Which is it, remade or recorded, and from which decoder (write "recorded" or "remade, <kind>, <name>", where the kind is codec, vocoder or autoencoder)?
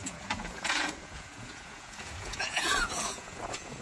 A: remade, vocoder, Vocos